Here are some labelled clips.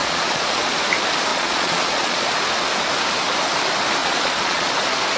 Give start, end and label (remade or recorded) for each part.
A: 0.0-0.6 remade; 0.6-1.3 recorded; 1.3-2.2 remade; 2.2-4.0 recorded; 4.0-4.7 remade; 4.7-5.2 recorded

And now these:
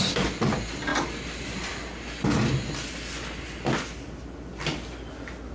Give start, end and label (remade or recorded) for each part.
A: 0.0-5.5 recorded

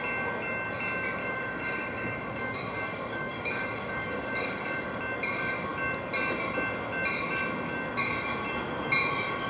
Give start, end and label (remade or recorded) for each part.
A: 0.0-1.2 recorded; 1.2-5.0 remade; 5.0-9.5 recorded

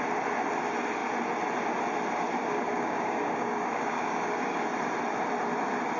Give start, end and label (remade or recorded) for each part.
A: 0.0-2.4 recorded; 2.4-4.6 remade; 4.6-6.0 recorded

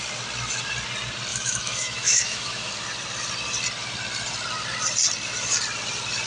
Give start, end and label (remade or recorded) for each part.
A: 0.0-1.3 recorded; 1.3-2.7 remade; 2.7-6.3 recorded

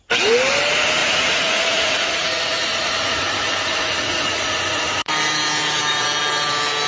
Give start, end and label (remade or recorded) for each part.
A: 0.0-1.0 recorded; 1.0-5.1 remade; 5.1-6.9 recorded